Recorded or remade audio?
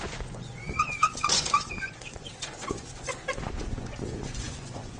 remade